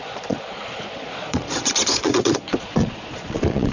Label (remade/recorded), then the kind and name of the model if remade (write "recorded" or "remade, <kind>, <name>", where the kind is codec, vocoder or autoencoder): remade, vocoder, Vocos